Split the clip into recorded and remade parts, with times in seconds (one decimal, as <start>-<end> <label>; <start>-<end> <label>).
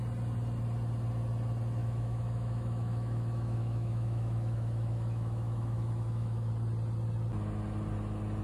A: 0.0-1.8 recorded; 1.8-6.5 remade; 6.5-8.4 recorded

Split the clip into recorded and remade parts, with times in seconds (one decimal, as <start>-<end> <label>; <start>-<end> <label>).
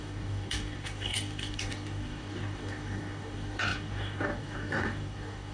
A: 0.0-5.5 remade